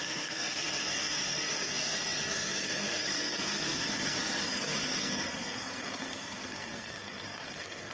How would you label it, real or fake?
fake